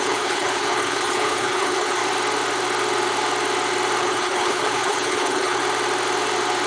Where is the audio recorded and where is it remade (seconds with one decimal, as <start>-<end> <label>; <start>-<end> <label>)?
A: 0.0-2.0 remade; 2.0-4.0 recorded; 4.0-5.6 remade; 5.6-6.7 recorded